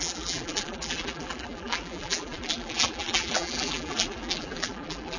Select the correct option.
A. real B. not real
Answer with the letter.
B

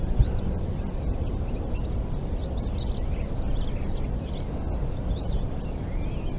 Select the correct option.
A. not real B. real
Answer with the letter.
B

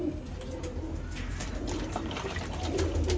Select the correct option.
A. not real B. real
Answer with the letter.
B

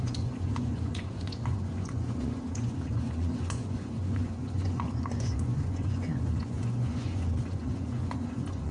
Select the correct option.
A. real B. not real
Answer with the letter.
B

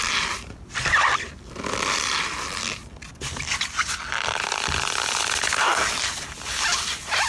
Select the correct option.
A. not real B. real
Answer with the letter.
A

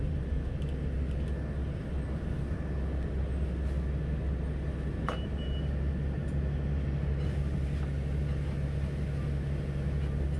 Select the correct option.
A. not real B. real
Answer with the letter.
B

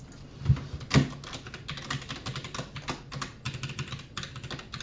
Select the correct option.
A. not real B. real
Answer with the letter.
B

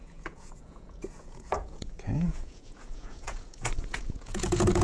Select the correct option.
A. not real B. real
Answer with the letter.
A